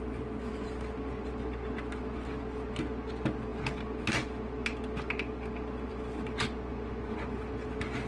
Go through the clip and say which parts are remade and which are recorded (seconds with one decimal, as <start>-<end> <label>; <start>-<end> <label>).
0.0-6.7 recorded; 6.7-7.4 remade; 7.4-8.1 recorded